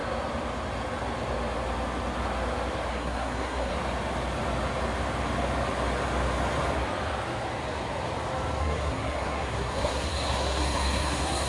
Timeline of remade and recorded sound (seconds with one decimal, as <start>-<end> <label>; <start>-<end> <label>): 0.0-2.9 recorded; 2.9-3.7 remade; 3.7-8.6 recorded; 8.6-11.5 remade